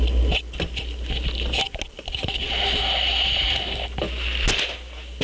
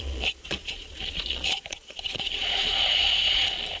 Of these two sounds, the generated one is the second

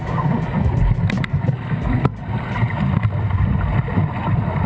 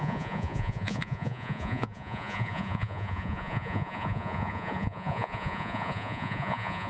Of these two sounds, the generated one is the second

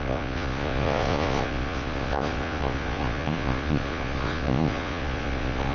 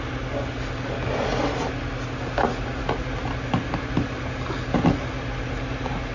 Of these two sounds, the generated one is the first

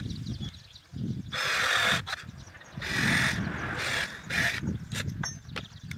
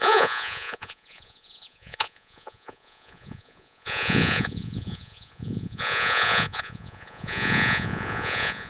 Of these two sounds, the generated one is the second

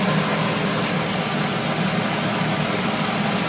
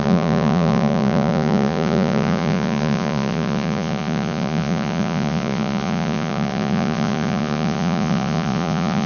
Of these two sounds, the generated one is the second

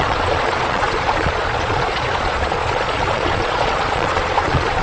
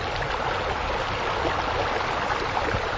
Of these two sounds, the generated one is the first